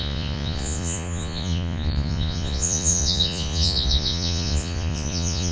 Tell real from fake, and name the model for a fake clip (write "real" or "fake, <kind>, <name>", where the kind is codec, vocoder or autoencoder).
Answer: fake, vocoder, Vocos